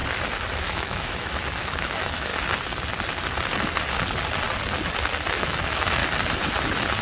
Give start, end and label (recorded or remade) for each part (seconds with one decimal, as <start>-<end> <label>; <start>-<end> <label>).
0.0-0.5 recorded; 0.5-2.3 remade; 2.3-5.3 recorded; 5.3-6.0 remade; 6.0-7.0 recorded